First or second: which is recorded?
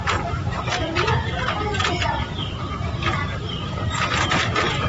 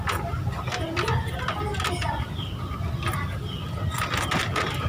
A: second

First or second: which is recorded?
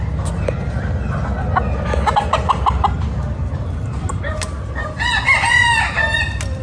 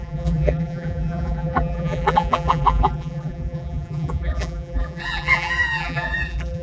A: first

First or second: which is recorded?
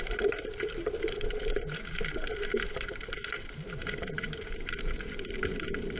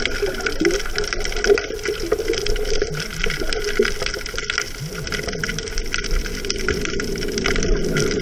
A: second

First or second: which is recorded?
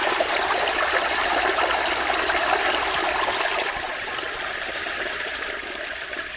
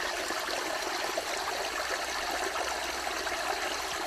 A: second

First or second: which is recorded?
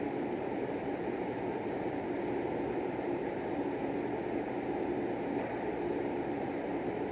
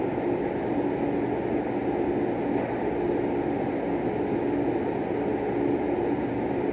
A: second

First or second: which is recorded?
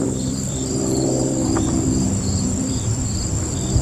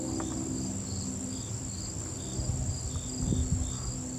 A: second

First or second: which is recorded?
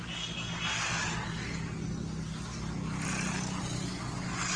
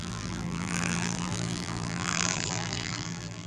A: first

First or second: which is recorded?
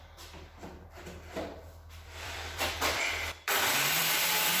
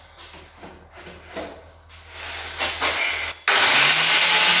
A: second